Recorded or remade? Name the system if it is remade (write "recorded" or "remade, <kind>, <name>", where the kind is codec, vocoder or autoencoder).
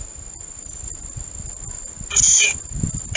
recorded